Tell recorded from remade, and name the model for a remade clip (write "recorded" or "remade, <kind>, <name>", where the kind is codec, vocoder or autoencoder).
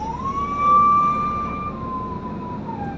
recorded